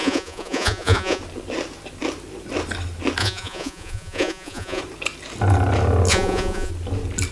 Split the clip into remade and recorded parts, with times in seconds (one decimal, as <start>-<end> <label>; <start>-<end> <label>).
0.0-1.2 remade; 1.2-3.2 recorded; 3.2-4.8 remade; 4.8-6.1 recorded; 6.1-6.7 remade; 6.7-7.3 recorded